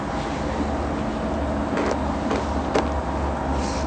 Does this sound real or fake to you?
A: real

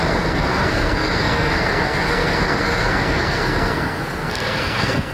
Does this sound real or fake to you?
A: fake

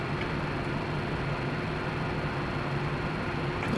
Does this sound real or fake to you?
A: real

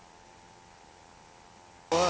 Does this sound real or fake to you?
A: real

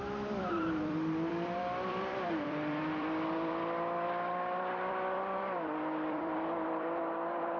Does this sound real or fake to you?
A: fake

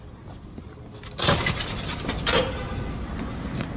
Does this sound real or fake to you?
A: real